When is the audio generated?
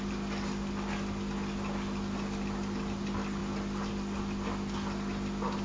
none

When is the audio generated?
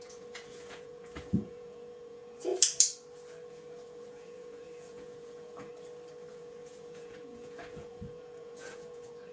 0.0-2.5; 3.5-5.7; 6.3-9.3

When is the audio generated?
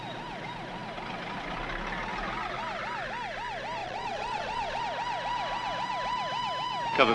3.8-4.8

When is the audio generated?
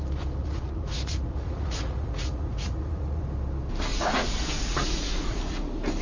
0.4-3.2; 3.9-5.4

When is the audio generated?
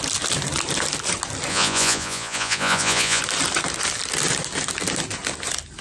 1.5-3.2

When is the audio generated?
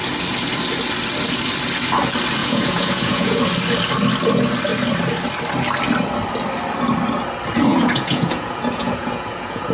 2.4-3.4; 7.7-9.7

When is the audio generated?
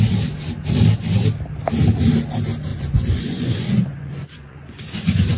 2.7-5.4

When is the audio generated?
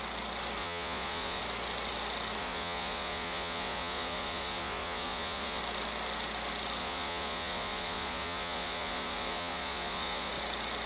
0.6-1.4; 2.4-5.6; 6.8-10.3